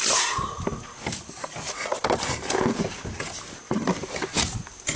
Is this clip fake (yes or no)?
no